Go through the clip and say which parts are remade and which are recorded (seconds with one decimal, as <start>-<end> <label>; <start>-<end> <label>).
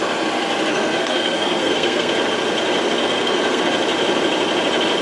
0.0-0.7 recorded; 0.7-2.1 remade; 2.1-3.0 recorded; 3.0-3.6 remade; 3.6-5.0 recorded